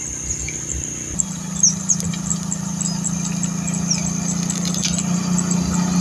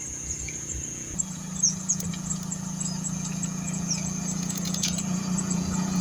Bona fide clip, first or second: first